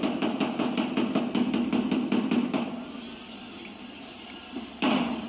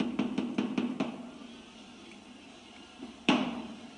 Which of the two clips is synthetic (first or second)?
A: first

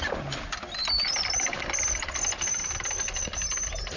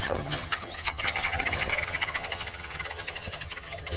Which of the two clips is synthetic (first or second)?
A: second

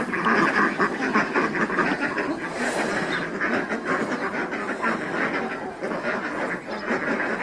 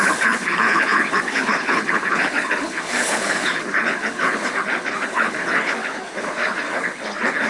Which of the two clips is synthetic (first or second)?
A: second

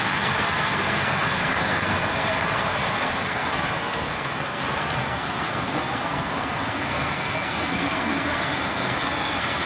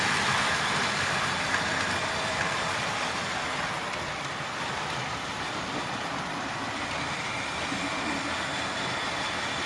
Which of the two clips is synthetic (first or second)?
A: first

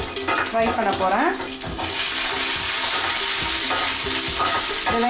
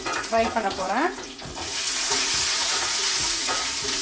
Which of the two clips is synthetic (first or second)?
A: second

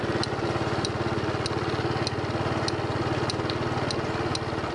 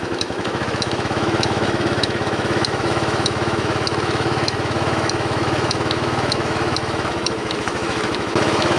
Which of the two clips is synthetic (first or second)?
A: second